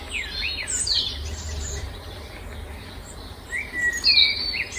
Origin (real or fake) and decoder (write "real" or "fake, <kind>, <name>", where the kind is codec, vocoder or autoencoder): real